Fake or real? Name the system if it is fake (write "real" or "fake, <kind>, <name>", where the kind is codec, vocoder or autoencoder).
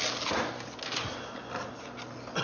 real